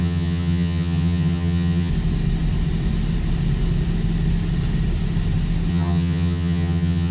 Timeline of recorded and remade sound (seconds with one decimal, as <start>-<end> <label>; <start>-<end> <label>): 0.0-1.9 remade; 1.9-5.7 recorded; 5.7-7.1 remade